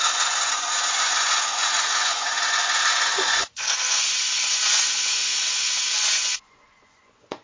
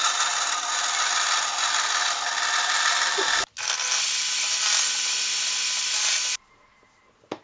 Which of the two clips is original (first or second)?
second